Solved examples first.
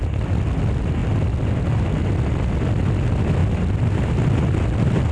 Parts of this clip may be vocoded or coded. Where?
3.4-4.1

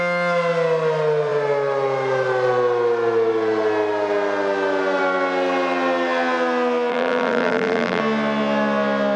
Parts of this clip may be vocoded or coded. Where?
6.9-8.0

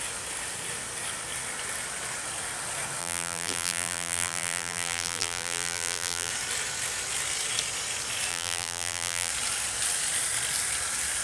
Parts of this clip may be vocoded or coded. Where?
3.0-6.3; 8.3-9.3

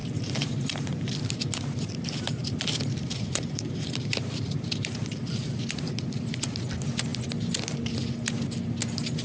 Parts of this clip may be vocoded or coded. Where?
0.0-1.1; 2.4-5.2

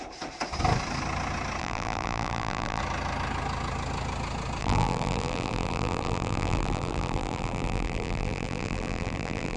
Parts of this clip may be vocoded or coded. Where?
1.6-2.8; 4.6-9.6

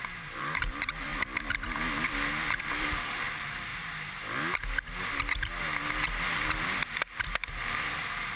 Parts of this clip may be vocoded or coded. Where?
0.0-1.1; 2.6-3.7; 7.7-8.4